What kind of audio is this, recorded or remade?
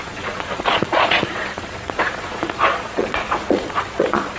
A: remade